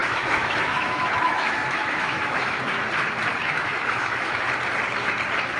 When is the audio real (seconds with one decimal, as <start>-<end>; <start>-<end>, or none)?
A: 2.6-3.4; 4.4-5.6